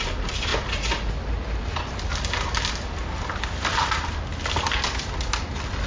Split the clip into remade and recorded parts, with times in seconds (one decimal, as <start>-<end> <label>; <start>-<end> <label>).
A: 0.0-5.9 recorded